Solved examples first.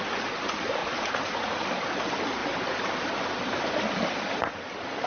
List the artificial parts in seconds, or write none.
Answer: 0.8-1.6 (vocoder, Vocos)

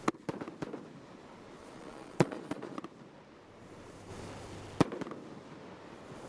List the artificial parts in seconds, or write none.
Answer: 1.6-2.8 (vocoder, Vocos)

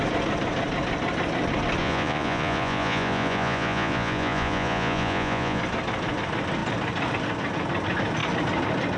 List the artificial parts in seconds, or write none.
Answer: 1.8-5.6 (vocoder, Vocos)

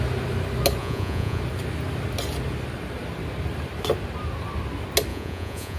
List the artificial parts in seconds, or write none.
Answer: 0.8-1.4 (vocoder, Vocos); 5.1-5.8

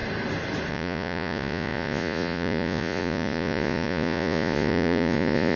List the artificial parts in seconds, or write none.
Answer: 0.7-5.6 (vocoder, Vocos)

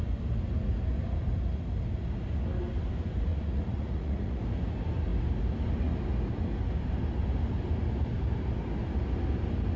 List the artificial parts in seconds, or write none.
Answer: 3.3-4.4 (vocoder, Vocos)